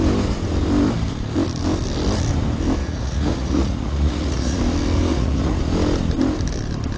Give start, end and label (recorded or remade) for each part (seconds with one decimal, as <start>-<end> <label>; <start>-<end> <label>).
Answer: 0.0-2.8 recorded; 2.8-4.6 remade; 4.6-5.1 recorded; 5.1-5.6 remade; 5.6-7.0 recorded